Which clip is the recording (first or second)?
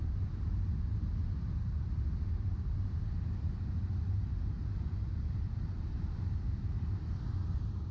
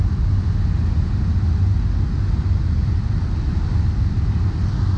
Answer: second